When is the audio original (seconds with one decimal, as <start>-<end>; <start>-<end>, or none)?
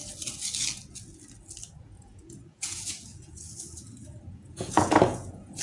0.0-1.8